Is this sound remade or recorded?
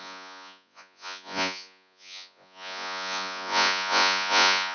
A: remade